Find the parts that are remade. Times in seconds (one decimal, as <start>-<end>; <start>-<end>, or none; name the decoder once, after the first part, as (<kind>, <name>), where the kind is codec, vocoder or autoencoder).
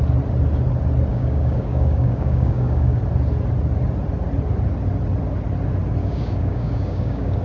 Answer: 1.1-3.0 (codec, DAC); 6.0-7.4